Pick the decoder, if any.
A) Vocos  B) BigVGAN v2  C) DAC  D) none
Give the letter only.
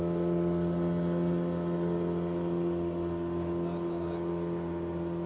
D